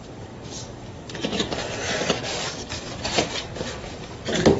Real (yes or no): no